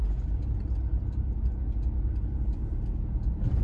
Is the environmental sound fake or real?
real